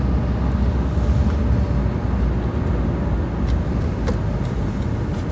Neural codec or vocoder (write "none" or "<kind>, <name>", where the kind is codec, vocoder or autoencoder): none